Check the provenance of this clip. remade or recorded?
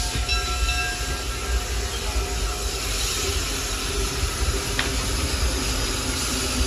recorded